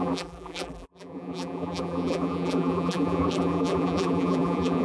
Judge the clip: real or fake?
fake